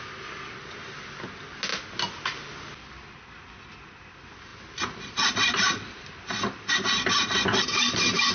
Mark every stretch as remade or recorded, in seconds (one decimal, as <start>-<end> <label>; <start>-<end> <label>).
0.0-8.3 recorded